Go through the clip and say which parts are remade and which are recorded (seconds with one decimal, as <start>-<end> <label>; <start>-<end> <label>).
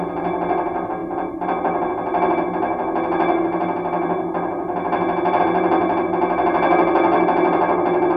0.0-8.2 recorded